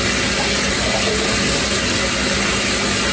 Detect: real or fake real